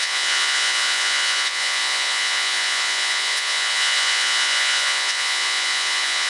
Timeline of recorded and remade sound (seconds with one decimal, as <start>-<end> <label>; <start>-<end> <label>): 0.0-6.3 remade